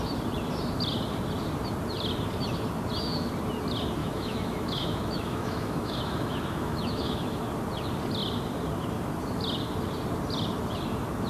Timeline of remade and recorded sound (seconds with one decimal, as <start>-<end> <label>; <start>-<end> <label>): 0.0-4.0 recorded; 4.0-7.4 remade; 7.4-11.3 recorded